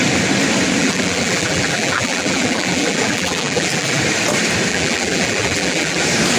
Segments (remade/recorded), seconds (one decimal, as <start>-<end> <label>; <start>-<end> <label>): 0.0-0.8 recorded; 0.8-4.0 remade; 4.0-4.7 recorded; 4.7-6.0 remade; 6.0-6.4 recorded